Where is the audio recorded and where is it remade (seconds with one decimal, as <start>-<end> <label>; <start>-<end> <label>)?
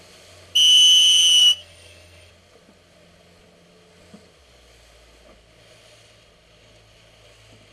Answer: 0.0-1.4 recorded; 1.4-2.3 remade; 2.3-7.7 recorded